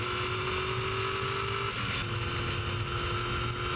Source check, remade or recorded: recorded